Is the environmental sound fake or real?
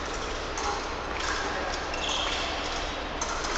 fake